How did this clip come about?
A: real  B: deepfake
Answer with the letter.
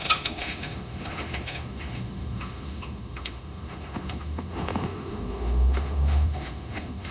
B